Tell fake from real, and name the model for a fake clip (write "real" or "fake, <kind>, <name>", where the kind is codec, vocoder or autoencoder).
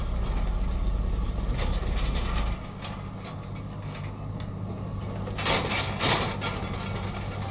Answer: real